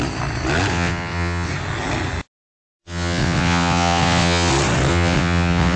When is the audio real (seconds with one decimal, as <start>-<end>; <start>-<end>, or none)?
0.0-0.7; 1.5-2.8; 4.5-4.9